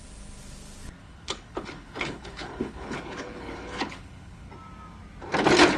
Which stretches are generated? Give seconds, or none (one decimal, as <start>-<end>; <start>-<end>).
1.0-4.5